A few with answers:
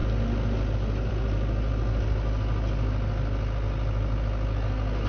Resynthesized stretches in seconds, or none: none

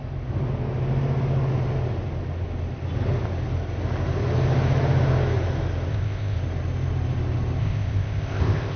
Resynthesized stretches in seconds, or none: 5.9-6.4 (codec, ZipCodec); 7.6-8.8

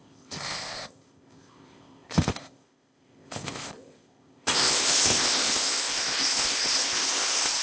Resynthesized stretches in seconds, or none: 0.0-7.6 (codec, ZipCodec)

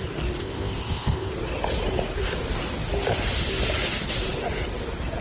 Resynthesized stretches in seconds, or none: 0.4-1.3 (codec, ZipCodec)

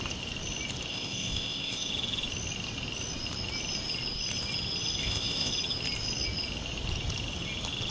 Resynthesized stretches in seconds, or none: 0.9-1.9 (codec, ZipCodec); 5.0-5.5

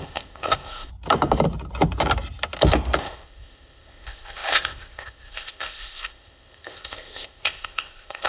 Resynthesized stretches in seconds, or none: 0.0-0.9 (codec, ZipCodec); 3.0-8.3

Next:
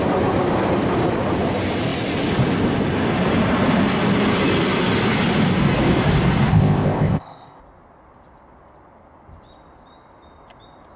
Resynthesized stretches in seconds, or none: 6.5-7.6 (codec, ZipCodec)

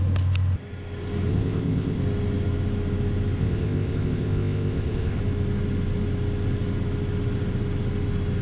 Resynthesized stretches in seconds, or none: 1.3-2.0 (codec, ZipCodec); 3.4-5.2